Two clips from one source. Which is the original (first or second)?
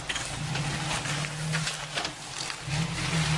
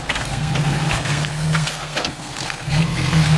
first